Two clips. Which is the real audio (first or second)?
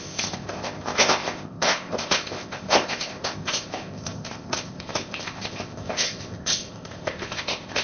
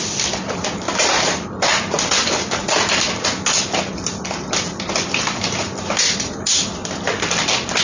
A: second